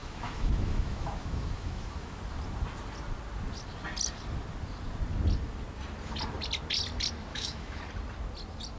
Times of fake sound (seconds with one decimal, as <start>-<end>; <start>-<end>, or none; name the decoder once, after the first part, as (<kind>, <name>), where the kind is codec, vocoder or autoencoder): 0.0-2.2 (autoencoder, DAC-VAE); 7.3-7.8